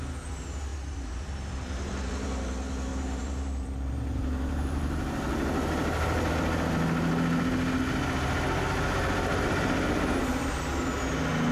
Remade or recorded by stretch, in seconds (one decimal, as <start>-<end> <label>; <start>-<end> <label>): 0.0-0.7 recorded; 0.7-2.1 remade; 2.1-2.9 recorded; 2.9-6.3 remade; 6.3-9.3 recorded; 9.3-10.6 remade; 10.6-11.5 recorded